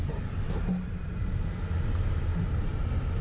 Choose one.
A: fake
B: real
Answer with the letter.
B